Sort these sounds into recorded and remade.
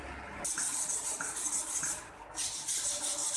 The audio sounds recorded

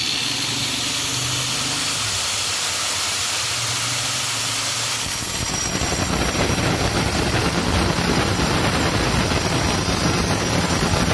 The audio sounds recorded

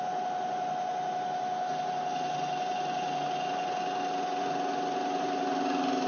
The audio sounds recorded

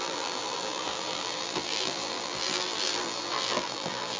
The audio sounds remade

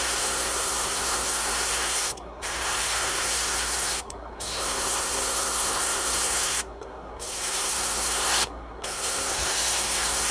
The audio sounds remade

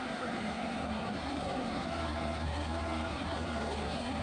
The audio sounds remade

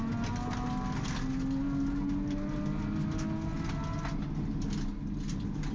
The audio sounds recorded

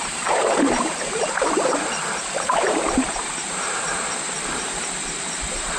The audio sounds remade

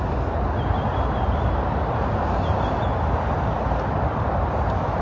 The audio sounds recorded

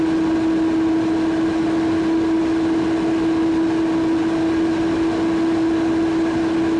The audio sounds recorded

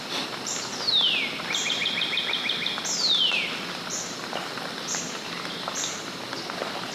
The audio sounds recorded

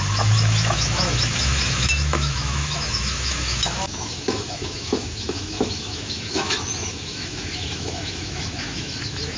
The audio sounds remade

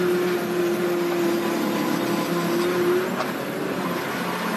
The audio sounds recorded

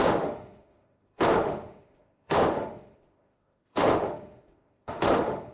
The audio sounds remade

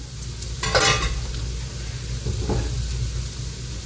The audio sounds recorded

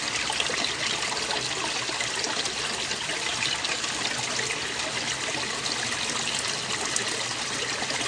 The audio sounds recorded